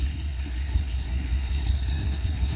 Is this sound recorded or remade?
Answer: remade